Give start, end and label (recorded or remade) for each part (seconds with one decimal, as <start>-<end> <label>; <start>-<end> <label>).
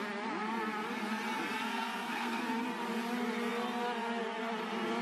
0.0-1.7 recorded; 1.7-2.4 remade; 2.4-5.0 recorded